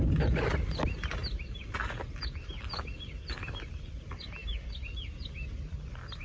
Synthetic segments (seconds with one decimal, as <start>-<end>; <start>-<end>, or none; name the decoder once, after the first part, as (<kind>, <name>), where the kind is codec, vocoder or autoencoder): none